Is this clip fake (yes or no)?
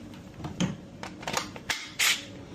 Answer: yes